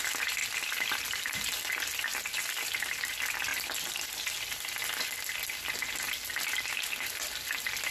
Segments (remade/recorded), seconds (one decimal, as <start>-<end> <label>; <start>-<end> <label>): 0.0-7.9 recorded